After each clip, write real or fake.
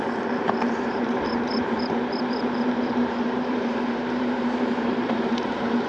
fake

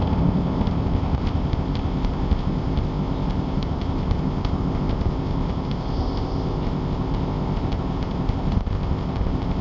fake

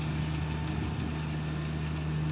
real